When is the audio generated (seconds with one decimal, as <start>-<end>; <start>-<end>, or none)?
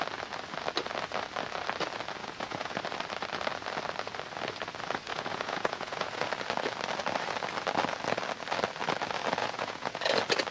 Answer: 2.2-2.8; 5.1-6.3; 9.4-10.0